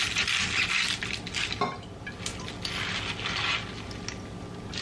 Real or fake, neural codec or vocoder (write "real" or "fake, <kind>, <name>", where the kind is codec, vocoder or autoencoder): real